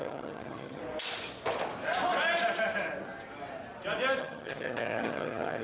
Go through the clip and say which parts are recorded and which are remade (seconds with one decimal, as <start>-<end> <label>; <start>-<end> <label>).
0.0-0.8 remade; 0.8-4.2 recorded; 4.2-5.6 remade